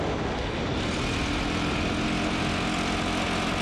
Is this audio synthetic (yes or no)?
no